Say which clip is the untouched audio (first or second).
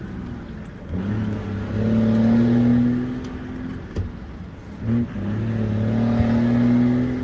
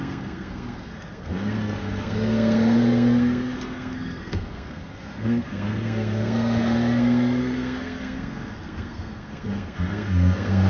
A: first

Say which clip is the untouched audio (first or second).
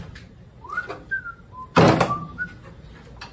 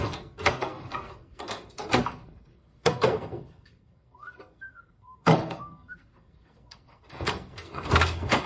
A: first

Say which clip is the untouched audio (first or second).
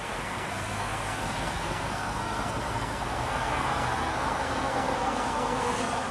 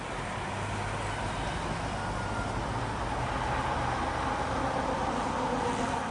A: second